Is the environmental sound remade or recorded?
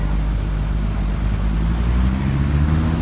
recorded